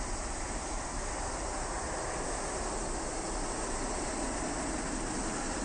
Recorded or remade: recorded